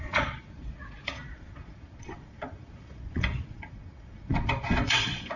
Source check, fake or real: fake